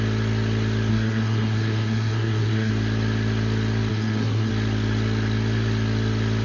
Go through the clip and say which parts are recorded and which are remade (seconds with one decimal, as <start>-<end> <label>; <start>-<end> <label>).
0.0-0.9 recorded; 0.9-2.7 remade; 2.7-3.9 recorded; 3.9-4.5 remade; 4.5-6.4 recorded